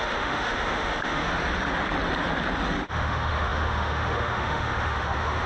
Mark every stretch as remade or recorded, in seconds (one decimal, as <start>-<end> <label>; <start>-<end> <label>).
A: 0.0-1.3 remade; 1.3-2.9 recorded; 2.9-5.5 remade